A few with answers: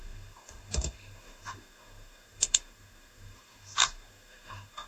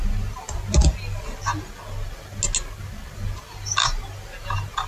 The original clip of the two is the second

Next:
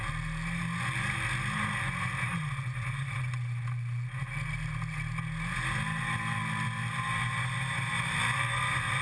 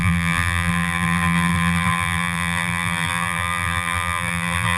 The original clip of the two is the first